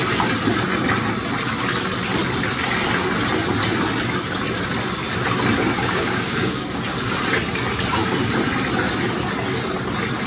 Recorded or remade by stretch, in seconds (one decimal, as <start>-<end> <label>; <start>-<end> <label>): 0.0-5.8 recorded; 5.8-6.8 remade; 6.8-10.3 recorded